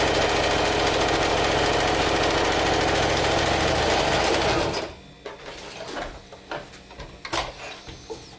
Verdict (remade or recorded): recorded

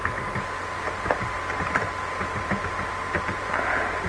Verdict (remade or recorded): remade